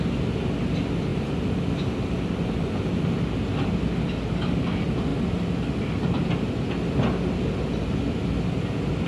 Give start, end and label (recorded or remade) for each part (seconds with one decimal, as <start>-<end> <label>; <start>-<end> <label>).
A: 0.0-9.1 recorded